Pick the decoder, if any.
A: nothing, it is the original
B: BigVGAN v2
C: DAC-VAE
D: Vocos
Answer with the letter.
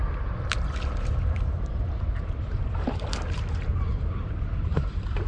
B